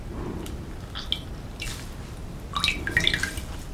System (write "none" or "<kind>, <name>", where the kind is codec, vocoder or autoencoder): none